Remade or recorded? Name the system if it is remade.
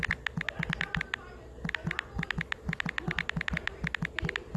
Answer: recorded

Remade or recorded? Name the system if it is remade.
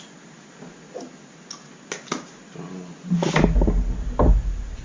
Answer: recorded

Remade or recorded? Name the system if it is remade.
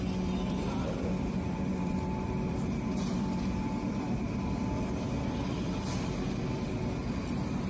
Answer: remade, vocoder, BigVGAN v2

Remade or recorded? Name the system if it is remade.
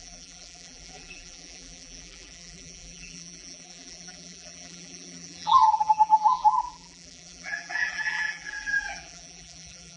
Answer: remade, vocoder, BigVGAN v2